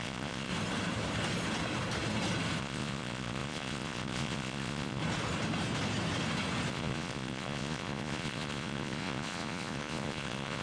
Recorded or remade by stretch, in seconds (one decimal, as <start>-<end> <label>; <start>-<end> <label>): 0.0-0.5 remade; 0.5-2.6 recorded; 2.6-5.0 remade; 5.0-6.7 recorded; 6.7-10.6 remade

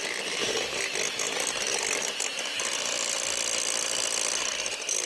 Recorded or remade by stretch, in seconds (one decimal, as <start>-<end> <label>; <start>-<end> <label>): 0.0-5.1 recorded

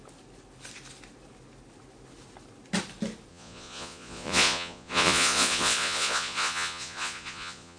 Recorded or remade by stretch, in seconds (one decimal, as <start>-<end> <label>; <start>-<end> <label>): 0.0-3.3 recorded; 3.3-7.8 remade

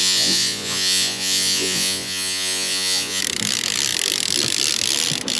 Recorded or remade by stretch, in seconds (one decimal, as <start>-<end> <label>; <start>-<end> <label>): 0.0-3.2 remade; 3.2-5.4 recorded

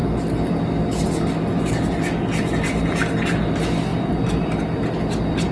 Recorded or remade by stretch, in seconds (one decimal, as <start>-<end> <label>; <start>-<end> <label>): 0.0-5.5 recorded

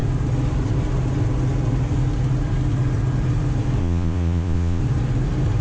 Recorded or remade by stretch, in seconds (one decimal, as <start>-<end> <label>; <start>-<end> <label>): 0.0-3.8 recorded; 3.8-4.8 remade; 4.8-5.6 recorded

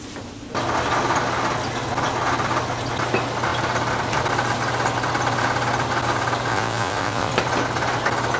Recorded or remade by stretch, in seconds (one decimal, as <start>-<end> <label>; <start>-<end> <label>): 0.0-6.5 recorded; 6.5-7.3 remade; 7.3-8.4 recorded